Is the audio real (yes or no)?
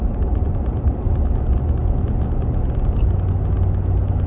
yes